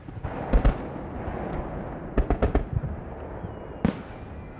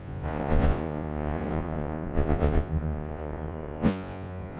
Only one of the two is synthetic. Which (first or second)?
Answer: second